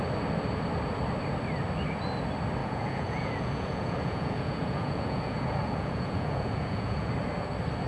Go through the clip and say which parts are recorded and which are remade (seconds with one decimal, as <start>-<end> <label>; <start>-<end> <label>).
0.0-2.6 recorded; 2.6-7.1 remade; 7.1-7.9 recorded